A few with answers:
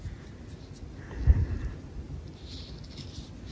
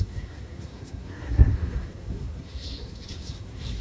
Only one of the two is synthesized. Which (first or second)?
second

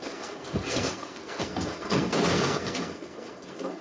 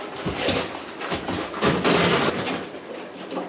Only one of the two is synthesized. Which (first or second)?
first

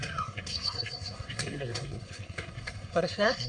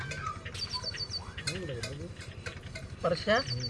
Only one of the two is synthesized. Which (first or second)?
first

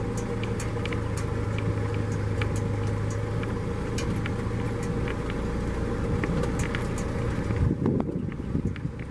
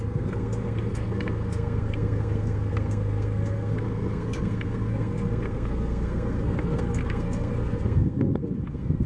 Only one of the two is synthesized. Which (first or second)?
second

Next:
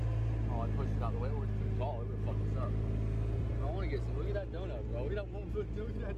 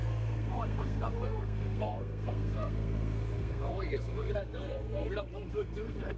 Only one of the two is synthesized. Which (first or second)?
second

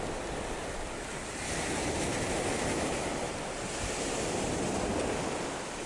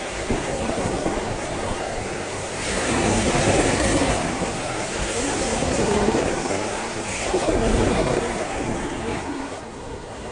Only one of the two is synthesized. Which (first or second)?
second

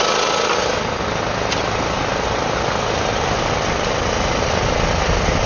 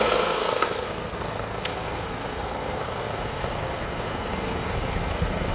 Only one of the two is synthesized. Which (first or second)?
second